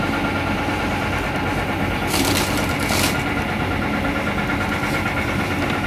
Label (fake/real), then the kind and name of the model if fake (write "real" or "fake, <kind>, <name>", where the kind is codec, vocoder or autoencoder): real